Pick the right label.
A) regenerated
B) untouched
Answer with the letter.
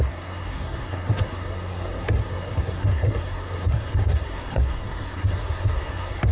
A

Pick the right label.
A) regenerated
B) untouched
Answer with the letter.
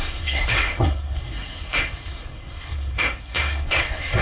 A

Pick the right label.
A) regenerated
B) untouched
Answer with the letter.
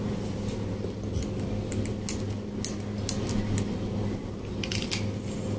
B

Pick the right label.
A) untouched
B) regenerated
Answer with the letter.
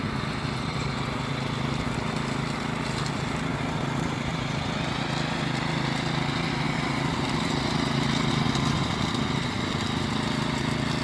A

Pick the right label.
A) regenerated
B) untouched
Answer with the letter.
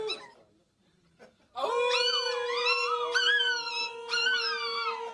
B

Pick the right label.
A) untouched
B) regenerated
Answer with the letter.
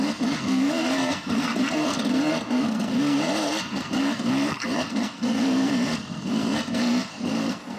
B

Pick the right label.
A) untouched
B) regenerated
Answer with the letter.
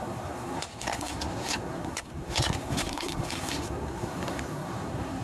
B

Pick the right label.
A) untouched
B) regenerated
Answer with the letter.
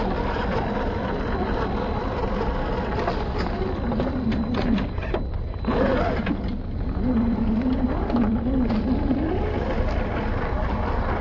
A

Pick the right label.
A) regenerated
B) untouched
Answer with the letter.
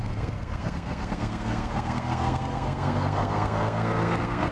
A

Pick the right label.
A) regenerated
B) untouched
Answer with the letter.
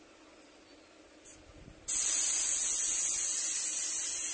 B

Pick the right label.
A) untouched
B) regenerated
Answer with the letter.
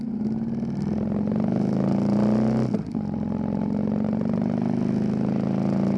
A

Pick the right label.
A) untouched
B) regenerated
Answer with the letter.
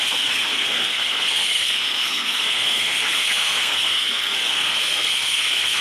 B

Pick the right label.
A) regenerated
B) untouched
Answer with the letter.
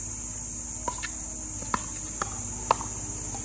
B